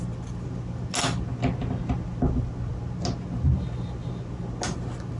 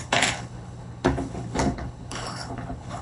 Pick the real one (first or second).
first